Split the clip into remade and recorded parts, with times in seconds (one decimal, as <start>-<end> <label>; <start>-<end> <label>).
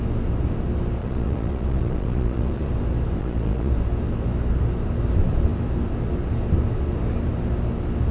0.0-1.0 recorded; 1.0-2.7 remade; 2.7-3.2 recorded; 3.2-3.7 remade; 3.7-8.1 recorded